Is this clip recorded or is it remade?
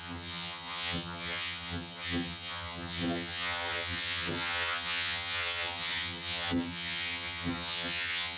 remade